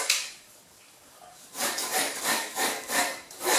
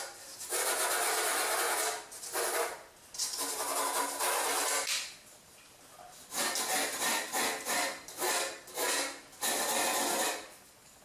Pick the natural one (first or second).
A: second